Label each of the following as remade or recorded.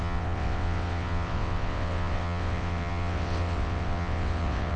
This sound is remade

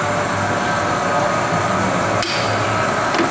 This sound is recorded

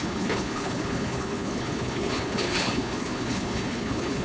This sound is remade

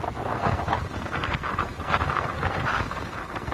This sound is remade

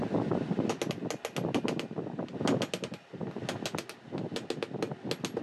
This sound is recorded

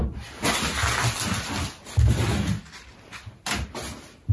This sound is recorded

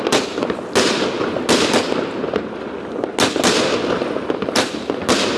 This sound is recorded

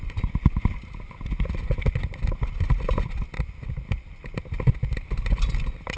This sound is recorded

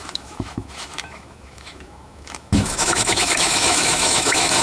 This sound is remade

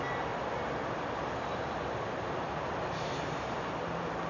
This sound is recorded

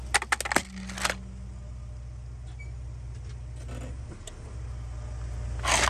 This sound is recorded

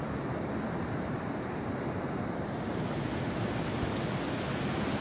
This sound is recorded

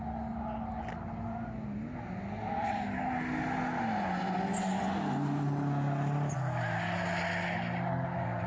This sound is recorded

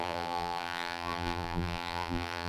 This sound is remade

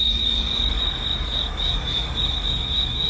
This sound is remade